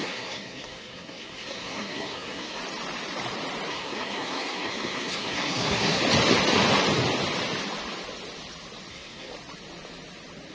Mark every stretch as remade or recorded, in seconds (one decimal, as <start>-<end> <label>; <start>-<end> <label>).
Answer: 0.0-2.6 remade; 2.6-3.7 recorded; 3.7-6.0 remade; 6.0-8.9 recorded; 8.9-9.3 remade; 9.3-10.5 recorded